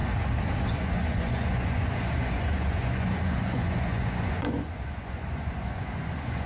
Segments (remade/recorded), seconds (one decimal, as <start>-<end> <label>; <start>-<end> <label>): 0.0-0.6 recorded; 0.6-6.5 remade

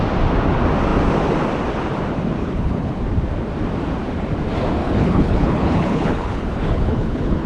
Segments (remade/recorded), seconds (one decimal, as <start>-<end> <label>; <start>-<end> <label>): 0.0-2.4 recorded; 2.4-3.0 remade; 3.0-4.8 recorded; 4.8-7.5 remade

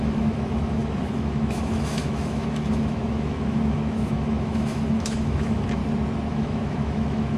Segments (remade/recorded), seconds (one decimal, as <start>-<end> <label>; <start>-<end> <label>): 0.0-5.8 remade; 5.8-6.3 recorded; 6.3-7.4 remade

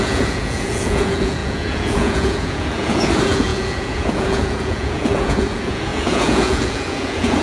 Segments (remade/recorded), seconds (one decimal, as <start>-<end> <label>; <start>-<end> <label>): 0.0-7.4 remade

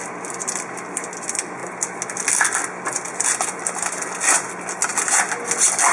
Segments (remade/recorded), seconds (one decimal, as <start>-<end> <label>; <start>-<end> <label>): 0.0-5.9 recorded

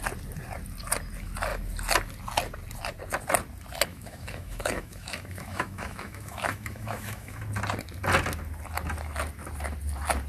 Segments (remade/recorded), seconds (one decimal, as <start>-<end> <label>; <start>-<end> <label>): 0.0-3.9 recorded; 3.9-7.4 remade; 7.4-10.3 recorded

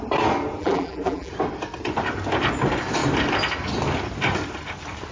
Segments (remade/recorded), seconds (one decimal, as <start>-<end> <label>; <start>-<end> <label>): 0.0-0.6 recorded; 0.6-1.3 remade; 1.3-5.1 recorded

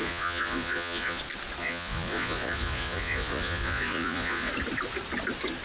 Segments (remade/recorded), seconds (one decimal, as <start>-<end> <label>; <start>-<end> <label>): 0.0-1.2 remade; 1.2-1.6 recorded; 1.6-4.5 remade; 4.5-5.6 recorded